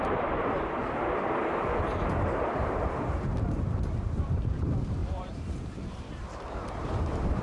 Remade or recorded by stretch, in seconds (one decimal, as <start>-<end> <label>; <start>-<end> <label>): 0.0-0.8 remade; 0.8-1.4 recorded; 1.4-7.4 remade